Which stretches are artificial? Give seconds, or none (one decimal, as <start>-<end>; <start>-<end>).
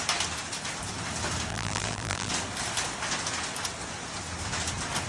1.5-2.3